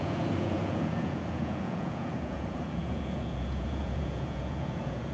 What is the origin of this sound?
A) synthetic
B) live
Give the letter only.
A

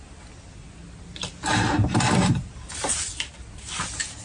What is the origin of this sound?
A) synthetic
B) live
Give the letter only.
B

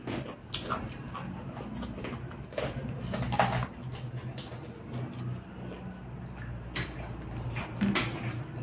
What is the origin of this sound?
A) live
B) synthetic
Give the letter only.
A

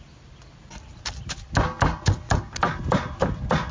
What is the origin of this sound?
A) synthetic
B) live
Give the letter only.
B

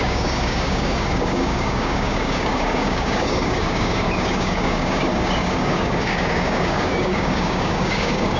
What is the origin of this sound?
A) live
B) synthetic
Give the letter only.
B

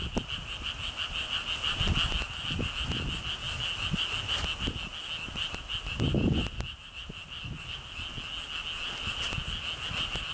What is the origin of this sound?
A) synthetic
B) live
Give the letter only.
B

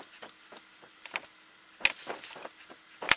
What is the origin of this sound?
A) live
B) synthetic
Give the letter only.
A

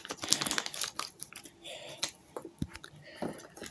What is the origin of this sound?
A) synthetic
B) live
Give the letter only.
B